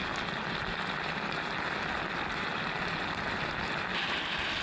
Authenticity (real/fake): real